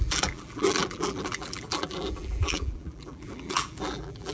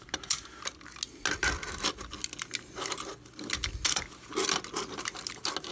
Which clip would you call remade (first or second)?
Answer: first